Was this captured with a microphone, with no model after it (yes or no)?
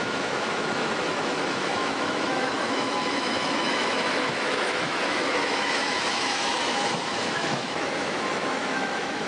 no